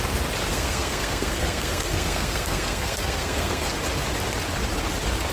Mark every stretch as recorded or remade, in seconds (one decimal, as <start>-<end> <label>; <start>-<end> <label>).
0.0-0.5 recorded; 0.5-3.7 remade; 3.7-5.3 recorded